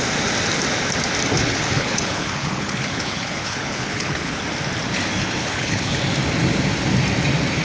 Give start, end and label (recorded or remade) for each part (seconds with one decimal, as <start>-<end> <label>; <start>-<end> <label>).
0.0-1.4 recorded; 1.4-4.4 remade; 4.4-5.4 recorded; 5.4-6.0 remade; 6.0-7.6 recorded